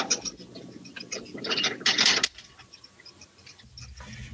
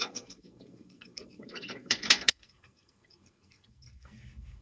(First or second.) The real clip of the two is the first